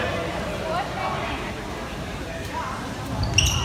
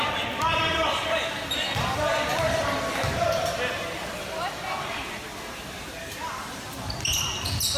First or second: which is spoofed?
second